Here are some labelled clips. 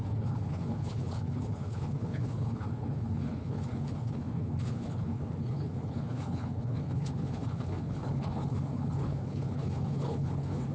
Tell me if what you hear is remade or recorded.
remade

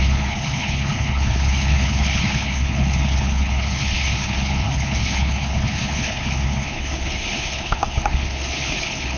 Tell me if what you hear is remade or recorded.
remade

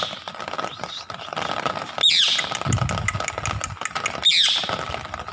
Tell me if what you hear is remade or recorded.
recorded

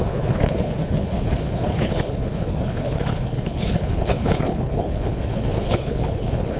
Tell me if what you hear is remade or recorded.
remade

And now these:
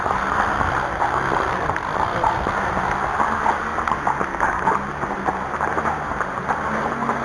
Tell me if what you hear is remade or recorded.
recorded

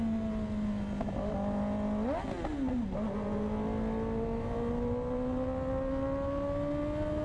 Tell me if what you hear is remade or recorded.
recorded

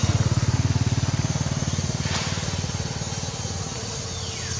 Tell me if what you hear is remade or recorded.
recorded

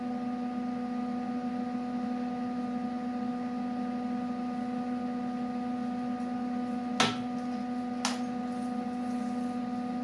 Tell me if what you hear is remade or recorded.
recorded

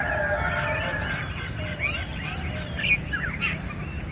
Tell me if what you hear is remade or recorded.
recorded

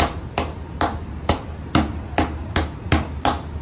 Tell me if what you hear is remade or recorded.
recorded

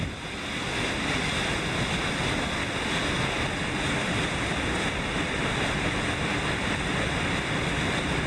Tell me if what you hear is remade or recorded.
recorded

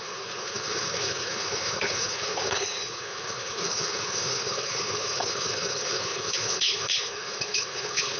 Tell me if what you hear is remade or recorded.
remade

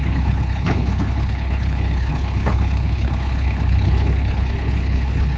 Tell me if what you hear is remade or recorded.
remade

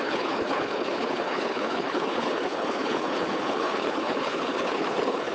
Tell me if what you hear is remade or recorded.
remade